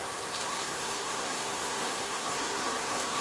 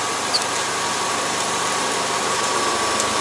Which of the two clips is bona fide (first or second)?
second